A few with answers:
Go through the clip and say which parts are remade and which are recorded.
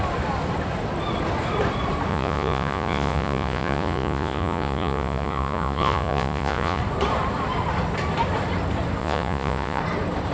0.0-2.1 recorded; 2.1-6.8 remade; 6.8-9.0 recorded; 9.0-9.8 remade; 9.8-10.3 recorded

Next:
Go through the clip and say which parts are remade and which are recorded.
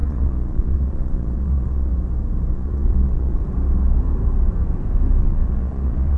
0.0-1.9 remade; 1.9-2.5 recorded; 2.5-3.4 remade; 3.4-5.2 recorded; 5.2-6.2 remade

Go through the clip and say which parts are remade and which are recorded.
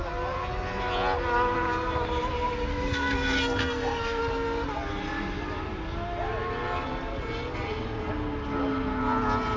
0.0-2.7 recorded; 2.7-4.2 remade; 4.2-9.6 recorded